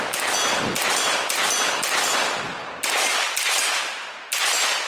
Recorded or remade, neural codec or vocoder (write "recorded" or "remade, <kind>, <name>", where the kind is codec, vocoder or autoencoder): recorded